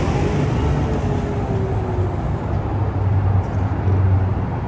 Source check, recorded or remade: recorded